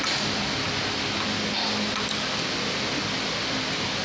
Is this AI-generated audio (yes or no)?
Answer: no